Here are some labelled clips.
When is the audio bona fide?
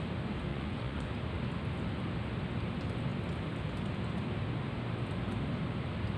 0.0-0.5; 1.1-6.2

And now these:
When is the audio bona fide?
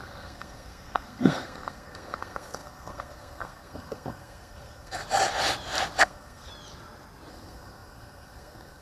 5.0-6.0; 6.5-7.3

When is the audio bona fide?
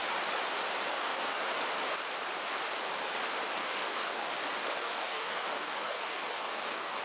0.0-0.9; 1.4-3.6; 4.3-4.8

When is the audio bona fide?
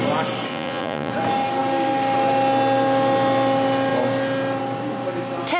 0.0-0.5; 1.1-5.6